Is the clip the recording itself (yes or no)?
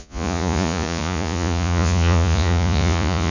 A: no